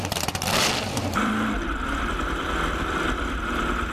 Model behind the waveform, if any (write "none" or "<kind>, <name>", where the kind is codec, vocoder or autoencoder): vocoder, BigVGAN v2